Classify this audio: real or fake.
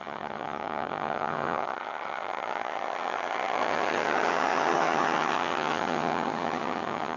fake